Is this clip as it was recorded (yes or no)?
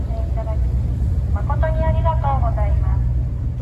yes